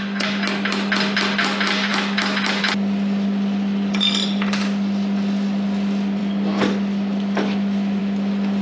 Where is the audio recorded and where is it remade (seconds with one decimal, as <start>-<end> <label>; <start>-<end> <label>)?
0.0-8.6 recorded